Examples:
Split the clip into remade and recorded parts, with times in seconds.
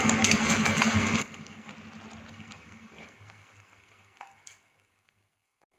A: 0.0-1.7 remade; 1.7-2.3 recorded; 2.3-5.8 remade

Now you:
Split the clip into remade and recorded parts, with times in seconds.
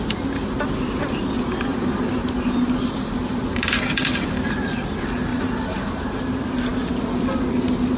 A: 0.0-1.7 recorded; 1.7-4.5 remade; 4.5-5.3 recorded; 5.3-6.2 remade; 6.2-8.0 recorded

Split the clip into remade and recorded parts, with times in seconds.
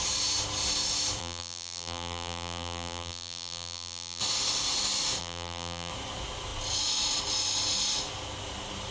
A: 0.0-1.2 recorded; 1.2-4.2 remade; 4.2-5.2 recorded; 5.2-5.9 remade; 5.9-8.9 recorded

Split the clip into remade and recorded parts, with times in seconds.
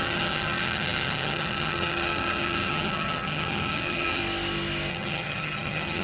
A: 0.0-4.2 remade; 4.2-4.9 recorded; 4.9-6.0 remade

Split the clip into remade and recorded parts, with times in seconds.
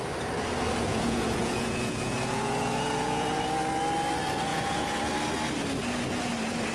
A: 0.0-0.9 recorded; 0.9-3.4 remade; 3.4-4.5 recorded; 4.5-5.1 remade; 5.1-6.7 recorded